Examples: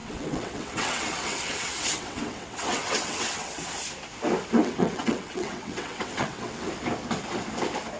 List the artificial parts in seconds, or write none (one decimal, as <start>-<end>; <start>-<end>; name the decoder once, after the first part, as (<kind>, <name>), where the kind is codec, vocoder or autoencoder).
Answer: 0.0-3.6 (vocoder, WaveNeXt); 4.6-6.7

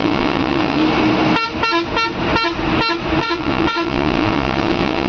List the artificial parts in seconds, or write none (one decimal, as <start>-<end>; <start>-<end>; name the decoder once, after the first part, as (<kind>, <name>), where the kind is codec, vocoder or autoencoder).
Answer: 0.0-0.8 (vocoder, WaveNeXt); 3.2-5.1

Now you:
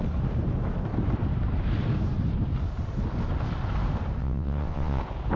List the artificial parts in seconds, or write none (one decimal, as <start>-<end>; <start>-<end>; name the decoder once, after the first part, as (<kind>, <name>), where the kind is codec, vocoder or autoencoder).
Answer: 4.2-5.0 (vocoder, WaveNeXt)

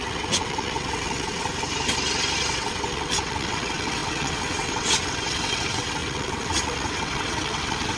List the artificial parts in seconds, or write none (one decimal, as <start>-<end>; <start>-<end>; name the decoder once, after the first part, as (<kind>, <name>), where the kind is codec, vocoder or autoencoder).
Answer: 0.0-1.5 (vocoder, WaveNeXt); 2.5-8.0

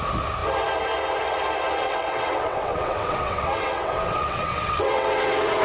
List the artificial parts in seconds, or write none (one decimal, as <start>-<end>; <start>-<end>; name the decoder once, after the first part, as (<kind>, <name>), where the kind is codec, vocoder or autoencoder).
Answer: 1.8-5.6 (vocoder, WaveNeXt)